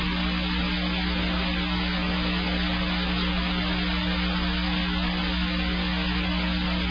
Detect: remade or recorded recorded